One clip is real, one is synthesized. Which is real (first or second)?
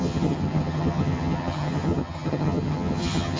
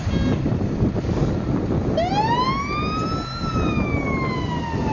second